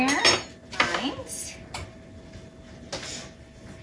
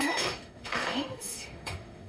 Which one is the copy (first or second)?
second